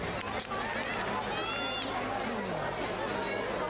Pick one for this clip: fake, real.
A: real